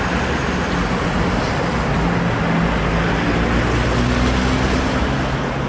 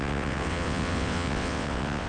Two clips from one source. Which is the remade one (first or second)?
second